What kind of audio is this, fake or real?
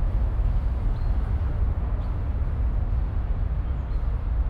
real